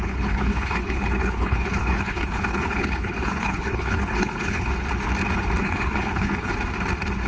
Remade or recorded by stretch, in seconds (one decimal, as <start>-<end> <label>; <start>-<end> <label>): 0.0-4.7 remade; 4.7-5.6 recorded; 5.6-6.5 remade; 6.5-7.3 recorded